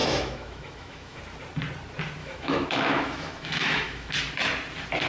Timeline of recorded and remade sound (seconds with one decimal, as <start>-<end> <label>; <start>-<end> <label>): 0.0-1.2 remade; 1.2-2.2 recorded; 2.2-4.1 remade; 4.1-5.1 recorded